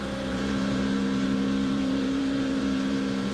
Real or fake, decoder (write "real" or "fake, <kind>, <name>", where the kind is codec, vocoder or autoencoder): fake, vocoder, BigVGAN v2